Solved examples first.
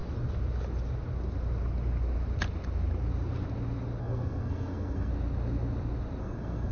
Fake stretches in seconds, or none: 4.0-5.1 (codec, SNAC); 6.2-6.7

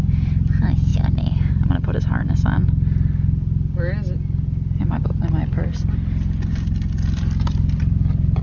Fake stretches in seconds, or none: 0.0-2.6 (vocoder, BigVGAN v2); 5.0-8.4

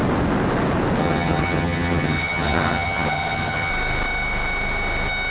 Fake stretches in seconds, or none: 1.0-3.7 (vocoder, HiFi-GAN)

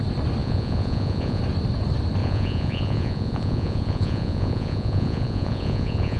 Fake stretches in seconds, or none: 0.4-1.4 (vocoder, Vocos); 2.2-6.2